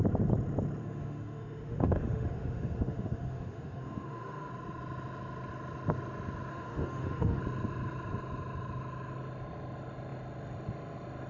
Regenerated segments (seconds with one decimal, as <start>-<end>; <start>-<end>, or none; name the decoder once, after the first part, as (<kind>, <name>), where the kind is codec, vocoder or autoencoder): 0.8-4.5 (autoencoder, DAC-VAE); 6.5-7.4